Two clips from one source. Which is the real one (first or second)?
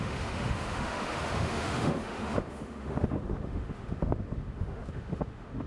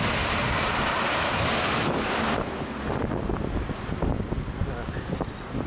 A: second